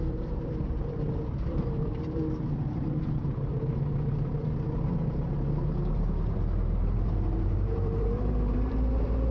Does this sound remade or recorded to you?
remade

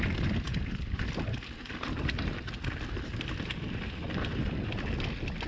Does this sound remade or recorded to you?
recorded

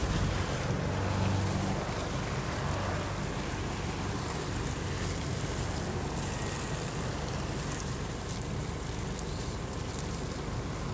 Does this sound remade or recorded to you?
recorded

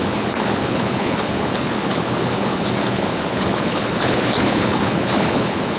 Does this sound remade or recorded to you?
remade